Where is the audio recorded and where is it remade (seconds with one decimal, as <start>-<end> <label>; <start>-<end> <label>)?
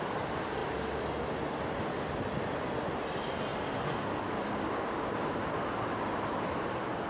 0.0-7.1 recorded